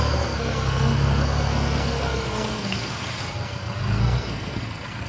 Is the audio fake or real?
fake